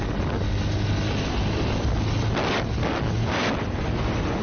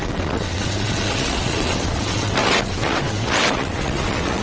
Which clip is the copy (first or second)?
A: second